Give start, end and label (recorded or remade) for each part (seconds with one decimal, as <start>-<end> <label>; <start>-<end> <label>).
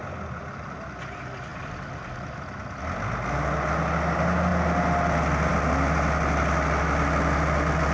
0.0-7.9 recorded